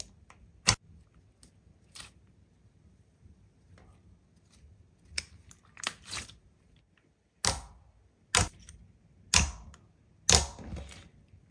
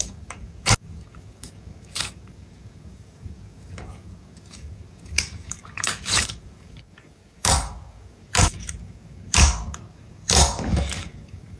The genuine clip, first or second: first